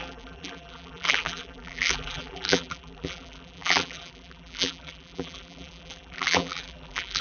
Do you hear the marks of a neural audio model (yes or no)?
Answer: yes